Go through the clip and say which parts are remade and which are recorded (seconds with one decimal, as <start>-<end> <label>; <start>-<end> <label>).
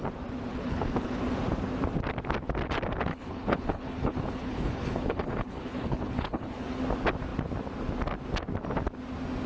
0.0-0.5 recorded; 0.5-1.2 remade; 1.2-3.1 recorded; 3.1-6.8 remade; 6.8-9.5 recorded